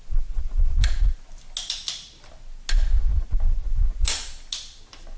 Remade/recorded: recorded